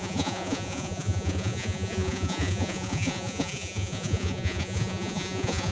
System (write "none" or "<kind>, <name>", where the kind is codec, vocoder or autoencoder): vocoder, Vocos